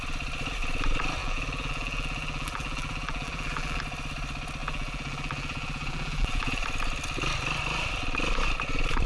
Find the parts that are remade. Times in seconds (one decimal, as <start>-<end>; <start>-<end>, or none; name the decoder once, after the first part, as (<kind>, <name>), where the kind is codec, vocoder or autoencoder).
1.2-3.8 (vocoder, BigVGAN v2); 4.6-6.6